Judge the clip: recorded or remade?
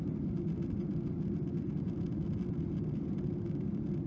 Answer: recorded